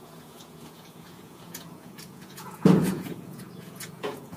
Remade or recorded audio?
remade